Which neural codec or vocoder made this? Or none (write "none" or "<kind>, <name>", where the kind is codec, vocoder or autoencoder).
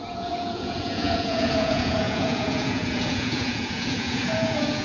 vocoder, Vocos